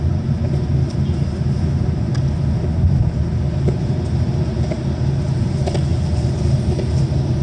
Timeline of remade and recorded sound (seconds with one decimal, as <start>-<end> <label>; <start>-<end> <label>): 0.0-7.4 recorded